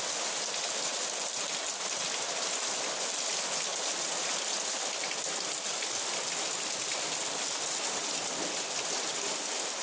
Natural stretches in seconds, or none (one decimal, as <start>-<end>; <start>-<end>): 0.0-9.8